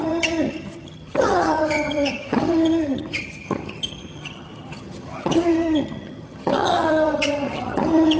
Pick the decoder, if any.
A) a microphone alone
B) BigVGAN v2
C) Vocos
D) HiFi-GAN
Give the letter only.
D